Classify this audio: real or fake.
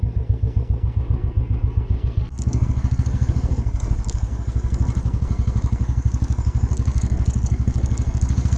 fake